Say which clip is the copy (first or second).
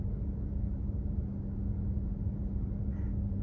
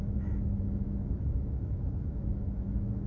second